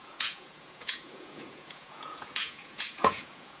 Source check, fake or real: fake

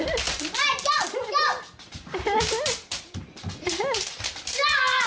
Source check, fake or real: real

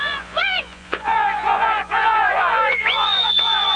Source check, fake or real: fake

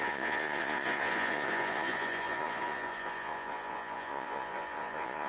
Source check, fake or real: fake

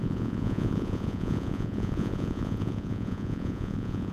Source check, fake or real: fake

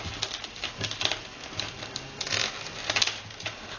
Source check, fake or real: real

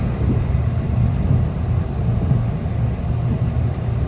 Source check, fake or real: real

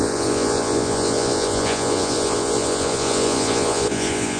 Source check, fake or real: fake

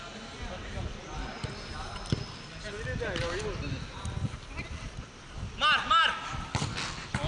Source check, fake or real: real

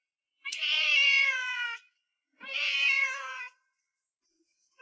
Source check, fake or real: fake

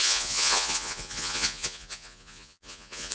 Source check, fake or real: fake